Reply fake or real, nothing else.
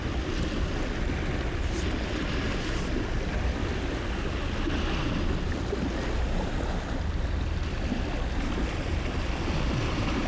real